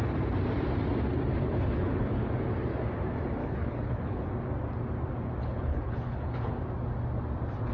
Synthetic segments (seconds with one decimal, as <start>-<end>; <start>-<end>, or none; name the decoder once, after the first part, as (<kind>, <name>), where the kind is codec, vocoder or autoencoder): 1.4-2.3 (codec, HILCodec); 3.4-4.3; 5.4-6.5